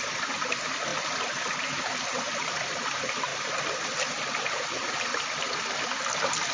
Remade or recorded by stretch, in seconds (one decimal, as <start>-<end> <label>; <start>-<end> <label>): 0.0-6.5 recorded